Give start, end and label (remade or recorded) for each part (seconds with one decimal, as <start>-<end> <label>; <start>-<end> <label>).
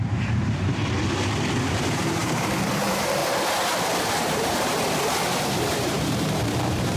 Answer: 0.0-0.8 remade; 0.8-1.5 recorded; 1.5-3.2 remade; 3.2-4.2 recorded; 4.2-7.0 remade